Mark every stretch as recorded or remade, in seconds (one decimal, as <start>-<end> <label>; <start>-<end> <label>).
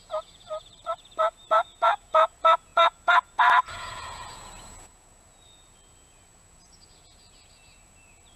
0.0-8.4 remade